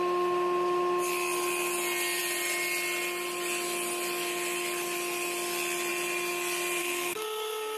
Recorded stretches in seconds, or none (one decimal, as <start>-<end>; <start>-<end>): 0.0-6.8